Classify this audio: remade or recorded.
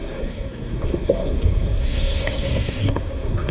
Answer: remade